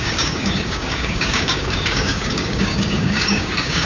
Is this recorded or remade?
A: remade